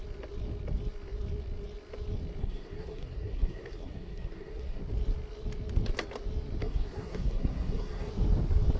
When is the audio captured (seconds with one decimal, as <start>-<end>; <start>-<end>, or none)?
0.0-2.4; 4.8-6.6; 8.1-8.8